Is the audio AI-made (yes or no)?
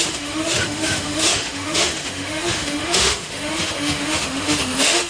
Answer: yes